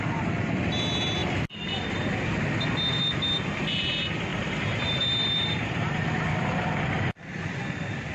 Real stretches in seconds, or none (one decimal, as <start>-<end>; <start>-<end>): 0.0-1.2; 2.2-4.3; 6.9-8.1